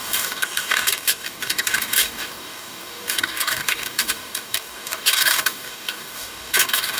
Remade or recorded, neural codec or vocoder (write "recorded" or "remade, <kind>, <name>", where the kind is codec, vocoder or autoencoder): remade, codec, DAC